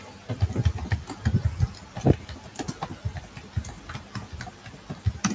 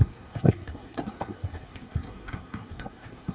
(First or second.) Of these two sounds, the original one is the first